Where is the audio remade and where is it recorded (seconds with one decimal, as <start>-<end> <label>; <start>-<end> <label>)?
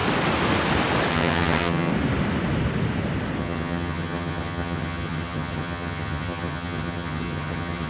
0.0-1.1 recorded; 1.1-1.9 remade; 1.9-3.4 recorded; 3.4-7.9 remade